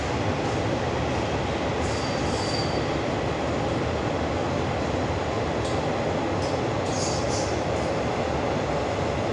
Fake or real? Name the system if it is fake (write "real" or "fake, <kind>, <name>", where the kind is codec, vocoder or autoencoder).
real